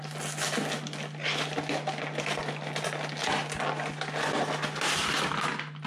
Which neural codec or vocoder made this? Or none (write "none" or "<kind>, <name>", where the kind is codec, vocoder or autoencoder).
none